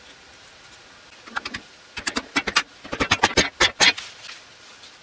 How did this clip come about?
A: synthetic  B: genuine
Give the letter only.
B